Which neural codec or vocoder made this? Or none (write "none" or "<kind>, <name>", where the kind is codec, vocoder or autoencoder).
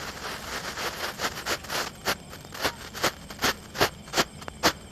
none